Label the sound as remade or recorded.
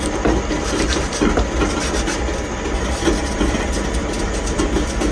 recorded